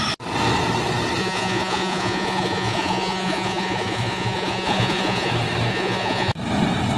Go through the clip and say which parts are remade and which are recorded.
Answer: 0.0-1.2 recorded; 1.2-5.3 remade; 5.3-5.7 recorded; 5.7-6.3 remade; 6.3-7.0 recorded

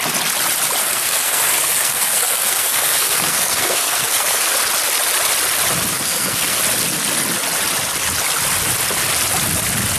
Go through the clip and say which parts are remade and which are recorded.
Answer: 0.0-0.8 recorded; 0.8-4.5 remade; 4.5-5.9 recorded; 5.9-6.6 remade; 6.6-10.0 recorded